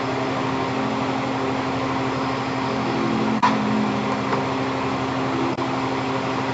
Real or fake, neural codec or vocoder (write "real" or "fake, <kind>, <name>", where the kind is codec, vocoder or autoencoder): real